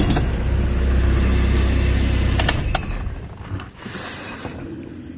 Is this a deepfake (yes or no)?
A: no